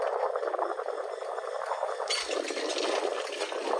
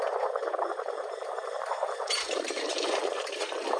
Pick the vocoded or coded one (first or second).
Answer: second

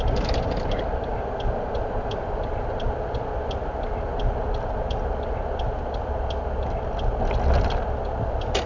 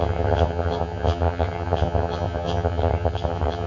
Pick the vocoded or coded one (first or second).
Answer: second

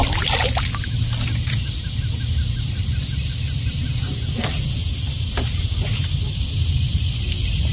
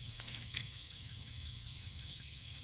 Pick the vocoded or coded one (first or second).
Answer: second